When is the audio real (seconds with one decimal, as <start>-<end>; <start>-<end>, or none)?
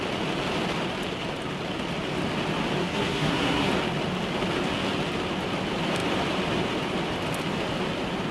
0.0-2.8; 3.7-8.3